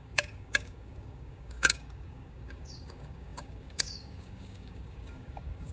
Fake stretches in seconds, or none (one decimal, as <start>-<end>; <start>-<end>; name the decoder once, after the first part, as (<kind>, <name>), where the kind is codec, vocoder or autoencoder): 0.0-5.7 (codec, DAC)